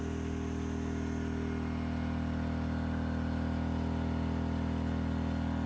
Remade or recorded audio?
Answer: recorded